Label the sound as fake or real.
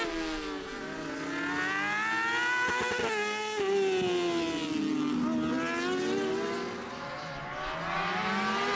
real